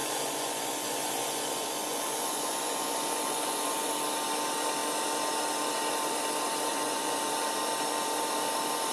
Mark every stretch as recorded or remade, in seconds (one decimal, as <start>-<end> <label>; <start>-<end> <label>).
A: 0.0-3.9 remade; 3.9-6.7 recorded; 6.7-7.2 remade; 7.2-8.9 recorded